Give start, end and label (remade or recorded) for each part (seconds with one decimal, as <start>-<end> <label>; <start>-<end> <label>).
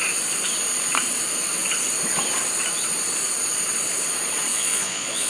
0.0-4.5 recorded; 4.5-5.3 remade